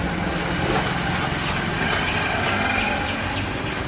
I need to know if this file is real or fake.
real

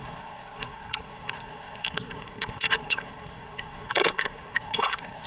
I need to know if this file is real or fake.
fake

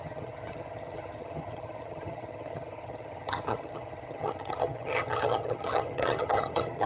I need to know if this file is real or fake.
fake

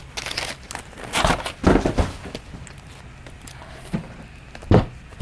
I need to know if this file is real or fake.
real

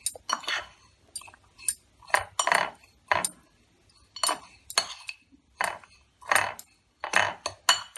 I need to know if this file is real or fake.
real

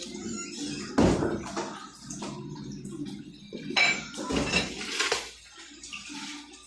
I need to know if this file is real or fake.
real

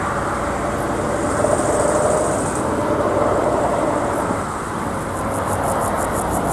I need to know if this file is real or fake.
real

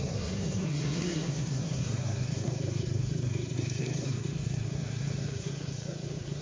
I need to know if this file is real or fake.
fake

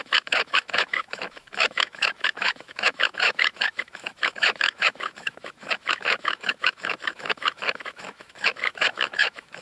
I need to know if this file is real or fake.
fake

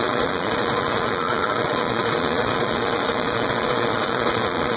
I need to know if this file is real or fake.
fake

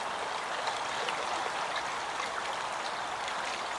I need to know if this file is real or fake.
real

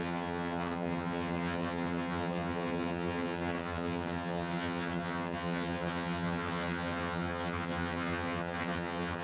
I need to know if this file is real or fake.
fake